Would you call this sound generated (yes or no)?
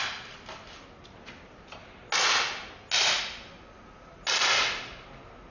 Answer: no